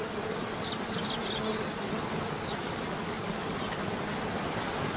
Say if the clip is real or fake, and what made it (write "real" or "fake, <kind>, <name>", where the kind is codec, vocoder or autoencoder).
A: real